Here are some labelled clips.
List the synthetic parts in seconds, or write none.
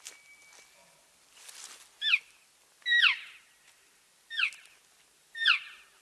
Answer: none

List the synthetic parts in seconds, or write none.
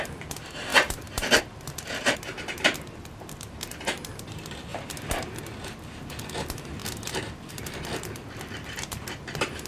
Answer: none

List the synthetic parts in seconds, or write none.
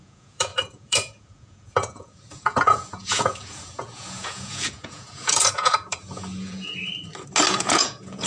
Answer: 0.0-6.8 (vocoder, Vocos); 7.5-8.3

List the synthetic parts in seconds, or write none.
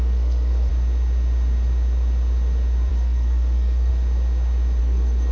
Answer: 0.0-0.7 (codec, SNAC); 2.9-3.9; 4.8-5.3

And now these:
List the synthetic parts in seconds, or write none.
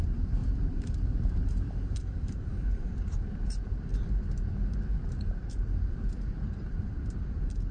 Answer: 0.0-3.9 (vocoder, BigVGAN v2); 4.7-7.7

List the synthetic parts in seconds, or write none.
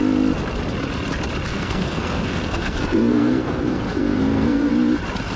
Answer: 1.5-4.7 (codec, SNAC)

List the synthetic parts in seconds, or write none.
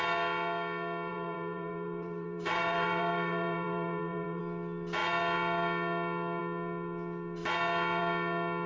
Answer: 1.1-4.4 (vocoder, BigVGAN v2)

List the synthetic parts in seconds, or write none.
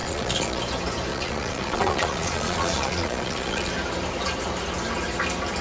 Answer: 0.0-0.6 (vocoder, Vocos); 1.1-3.7